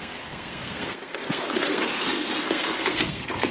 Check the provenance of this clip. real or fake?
fake